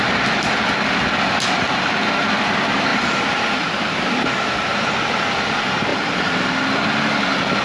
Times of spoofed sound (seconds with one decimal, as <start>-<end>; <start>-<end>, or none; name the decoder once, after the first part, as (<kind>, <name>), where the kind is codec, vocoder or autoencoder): 2.9-4.3 (vocoder, BigVGAN v2); 5.9-6.5